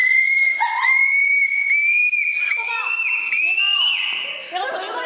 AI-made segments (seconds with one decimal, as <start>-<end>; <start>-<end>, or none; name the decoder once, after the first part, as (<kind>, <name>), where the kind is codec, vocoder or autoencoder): 0.0-1.7 (vocoder, Vocos)